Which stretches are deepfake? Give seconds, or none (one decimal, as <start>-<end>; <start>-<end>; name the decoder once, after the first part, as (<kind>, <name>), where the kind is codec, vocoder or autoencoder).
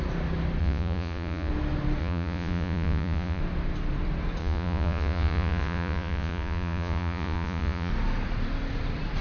0.6-1.5 (vocoder, Vocos); 2.0-3.4; 4.4-7.9